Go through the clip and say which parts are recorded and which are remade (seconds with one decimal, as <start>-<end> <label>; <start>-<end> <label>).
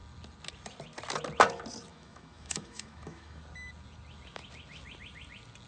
0.0-1.9 recorded; 1.9-3.4 remade; 3.4-5.7 recorded